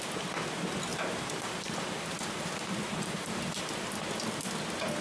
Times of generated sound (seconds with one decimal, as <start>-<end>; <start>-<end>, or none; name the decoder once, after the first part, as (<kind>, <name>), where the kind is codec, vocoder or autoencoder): 0.9-3.9 (vocoder, BigVGAN v2)